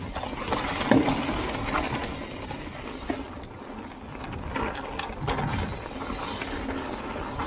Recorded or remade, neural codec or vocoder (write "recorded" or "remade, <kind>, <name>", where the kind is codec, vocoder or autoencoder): recorded